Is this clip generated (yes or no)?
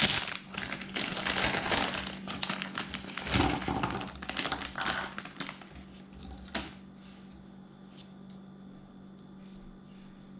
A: no